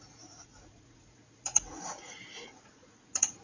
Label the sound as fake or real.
fake